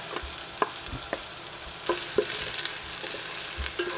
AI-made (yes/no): no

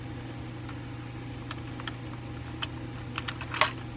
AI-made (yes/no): no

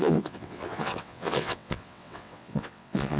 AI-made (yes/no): yes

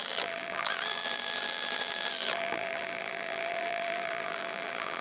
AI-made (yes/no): yes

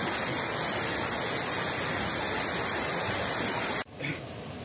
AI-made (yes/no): no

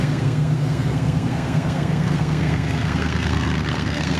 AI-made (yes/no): yes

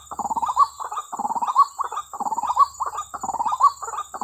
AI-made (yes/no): no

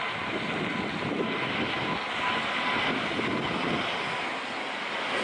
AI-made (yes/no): no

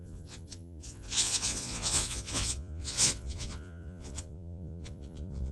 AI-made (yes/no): yes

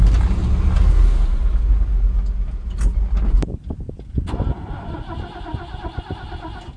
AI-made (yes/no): no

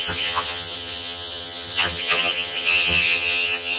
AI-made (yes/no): yes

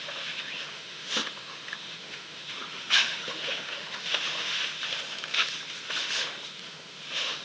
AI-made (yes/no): yes